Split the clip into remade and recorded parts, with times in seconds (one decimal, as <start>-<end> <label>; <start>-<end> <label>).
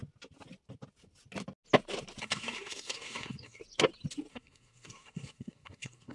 0.0-2.2 recorded; 2.2-3.6 remade; 3.6-4.3 recorded; 4.3-6.1 remade